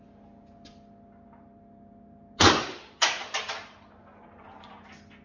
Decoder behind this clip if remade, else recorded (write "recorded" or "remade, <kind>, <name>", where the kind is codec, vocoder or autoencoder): recorded